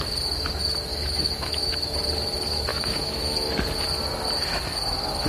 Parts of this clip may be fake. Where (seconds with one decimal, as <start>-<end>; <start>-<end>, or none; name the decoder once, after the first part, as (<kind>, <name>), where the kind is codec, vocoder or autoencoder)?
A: 0.9-1.7 (autoencoder, DAC-VAE); 2.7-3.5